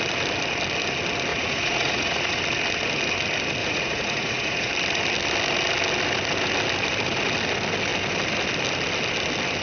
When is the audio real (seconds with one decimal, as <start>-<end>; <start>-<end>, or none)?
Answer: 0.0-1.3; 2.4-3.6; 4.7-9.6